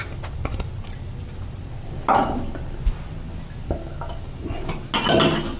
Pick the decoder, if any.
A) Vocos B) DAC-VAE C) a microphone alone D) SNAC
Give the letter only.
C